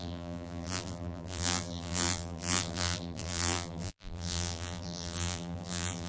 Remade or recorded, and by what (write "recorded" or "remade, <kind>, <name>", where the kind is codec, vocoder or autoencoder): remade, vocoder, BigVGAN v2